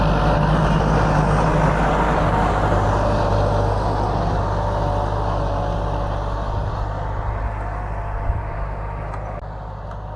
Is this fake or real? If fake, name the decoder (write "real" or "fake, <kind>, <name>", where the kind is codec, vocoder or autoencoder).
real